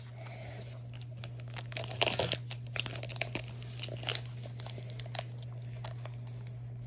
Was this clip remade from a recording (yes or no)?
no